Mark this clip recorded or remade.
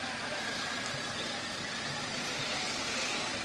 recorded